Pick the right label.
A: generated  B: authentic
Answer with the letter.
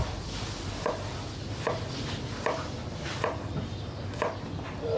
B